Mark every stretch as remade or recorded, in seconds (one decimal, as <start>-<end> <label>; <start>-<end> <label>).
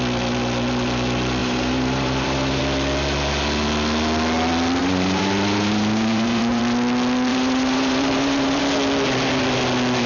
0.0-1.4 recorded; 1.4-2.6 remade; 2.6-4.8 recorded; 4.8-6.6 remade; 6.6-7.3 recorded; 7.3-8.6 remade; 8.6-10.1 recorded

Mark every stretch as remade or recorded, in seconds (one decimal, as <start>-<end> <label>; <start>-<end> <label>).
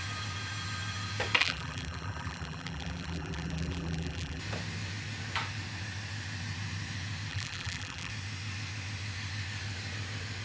0.0-1.4 recorded; 1.4-4.4 remade; 4.4-7.3 recorded; 7.3-8.1 remade; 8.1-10.4 recorded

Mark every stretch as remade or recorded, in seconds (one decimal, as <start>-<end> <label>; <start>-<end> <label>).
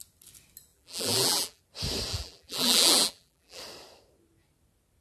0.0-0.7 recorded; 0.7-1.6 remade; 1.6-2.1 recorded; 2.1-3.6 remade; 3.6-5.0 recorded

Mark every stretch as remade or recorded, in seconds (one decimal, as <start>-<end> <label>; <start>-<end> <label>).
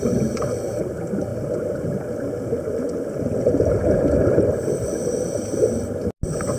0.0-6.6 recorded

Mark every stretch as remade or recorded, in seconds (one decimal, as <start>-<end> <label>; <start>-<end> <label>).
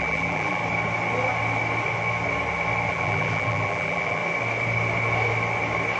0.0-0.6 remade; 0.6-2.9 recorded; 2.9-4.2 remade; 4.2-6.0 recorded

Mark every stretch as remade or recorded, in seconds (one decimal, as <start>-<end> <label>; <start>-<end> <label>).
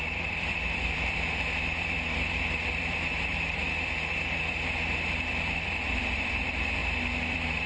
0.0-6.8 remade; 6.8-7.3 recorded; 7.3-7.7 remade